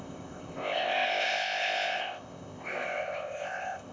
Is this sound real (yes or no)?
no